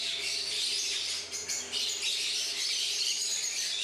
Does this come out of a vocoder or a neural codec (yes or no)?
yes